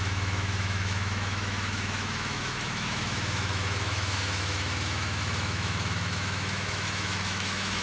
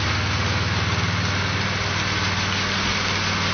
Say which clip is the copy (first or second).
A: first